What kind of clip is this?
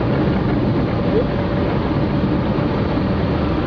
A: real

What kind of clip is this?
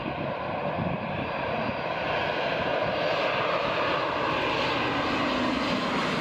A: real